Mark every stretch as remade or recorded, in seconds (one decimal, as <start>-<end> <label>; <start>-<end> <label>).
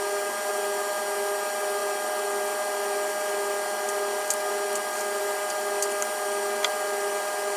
0.0-7.6 recorded